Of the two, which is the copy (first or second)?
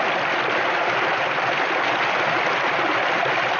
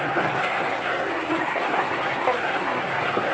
second